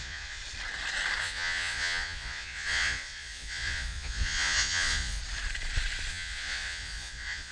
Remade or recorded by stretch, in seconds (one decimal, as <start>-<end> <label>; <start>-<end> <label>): 0.0-0.4 remade; 0.4-1.2 recorded; 1.2-5.2 remade; 5.2-6.1 recorded; 6.1-7.5 remade